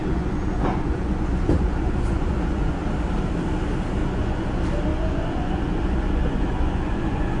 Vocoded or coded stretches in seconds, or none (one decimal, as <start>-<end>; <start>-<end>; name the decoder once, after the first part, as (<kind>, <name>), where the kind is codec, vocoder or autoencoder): 0.0-2.8 (vocoder, Vocos); 4.0-4.5; 4.9-7.4